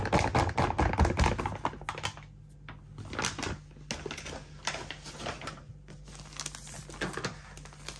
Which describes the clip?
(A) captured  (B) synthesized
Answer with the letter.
A